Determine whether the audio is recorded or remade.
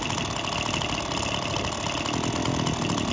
recorded